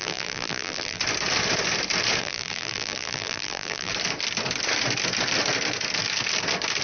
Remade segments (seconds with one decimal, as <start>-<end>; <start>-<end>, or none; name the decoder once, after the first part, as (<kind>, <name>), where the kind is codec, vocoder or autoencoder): 0.0-1.0 (vocoder, BigVGAN v2); 2.2-3.9